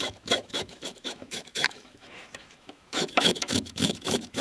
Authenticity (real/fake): fake